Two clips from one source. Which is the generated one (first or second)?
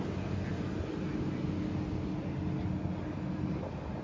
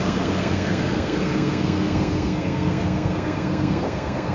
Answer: second